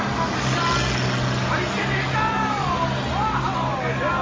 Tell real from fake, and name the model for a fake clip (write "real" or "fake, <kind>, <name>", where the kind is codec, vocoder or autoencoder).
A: real